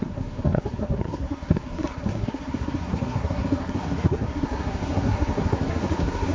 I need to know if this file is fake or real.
fake